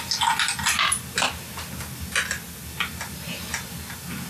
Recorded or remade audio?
recorded